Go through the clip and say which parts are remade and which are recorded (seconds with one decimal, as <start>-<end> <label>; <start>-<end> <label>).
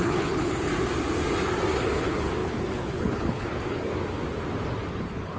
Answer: 0.0-0.7 remade; 0.7-1.8 recorded; 1.8-3.9 remade; 3.9-4.9 recorded; 4.9-5.4 remade